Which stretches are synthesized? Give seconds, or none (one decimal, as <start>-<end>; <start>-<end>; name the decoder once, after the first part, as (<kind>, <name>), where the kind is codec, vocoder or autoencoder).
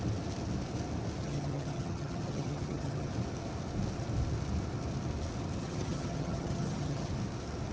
1.2-3.1 (vocoder, HiFi-GAN); 5.6-7.1